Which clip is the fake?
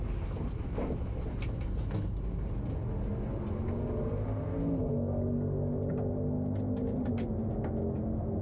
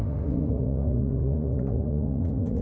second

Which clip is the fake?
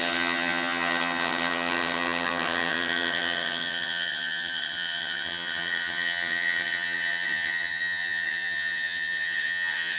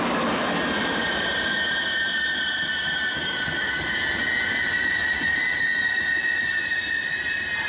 first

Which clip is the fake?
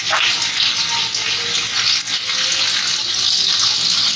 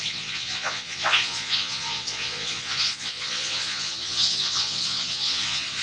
second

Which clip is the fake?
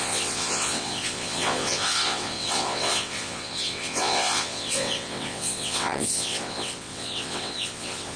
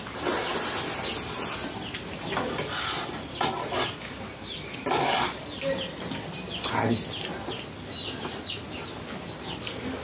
first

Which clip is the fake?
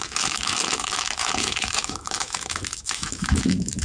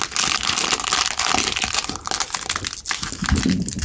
first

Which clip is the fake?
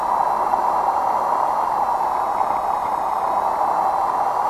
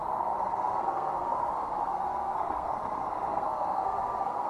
second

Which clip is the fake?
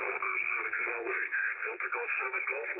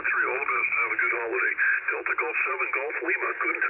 first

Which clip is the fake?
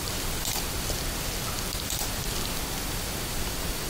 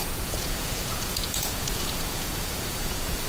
second